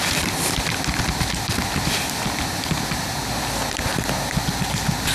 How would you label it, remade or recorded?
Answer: recorded